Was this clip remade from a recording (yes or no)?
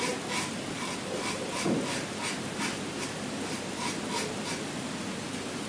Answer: no